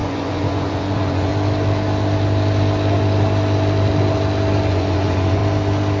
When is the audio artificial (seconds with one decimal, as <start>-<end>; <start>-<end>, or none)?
0.0-1.3; 4.7-5.4